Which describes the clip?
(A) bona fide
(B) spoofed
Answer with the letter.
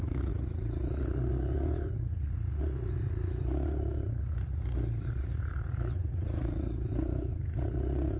B